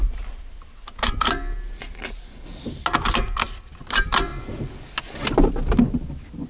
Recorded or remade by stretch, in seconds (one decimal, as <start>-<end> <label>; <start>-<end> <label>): 0.0-6.5 recorded